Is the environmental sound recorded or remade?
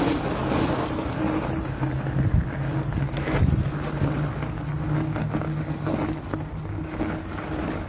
recorded